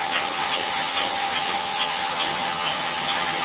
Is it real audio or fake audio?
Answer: fake